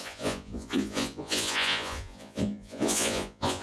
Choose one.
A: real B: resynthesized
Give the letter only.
B